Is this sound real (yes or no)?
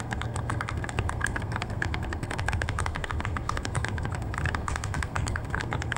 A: no